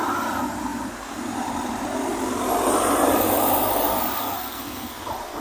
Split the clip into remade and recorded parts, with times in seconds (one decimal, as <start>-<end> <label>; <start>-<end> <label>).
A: 0.0-4.2 recorded; 4.2-5.0 remade; 5.0-5.4 recorded